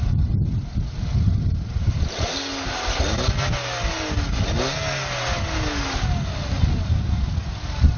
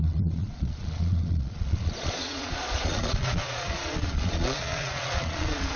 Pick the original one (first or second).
first